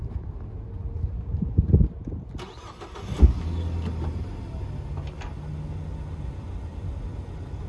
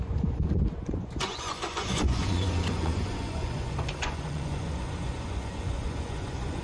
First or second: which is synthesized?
second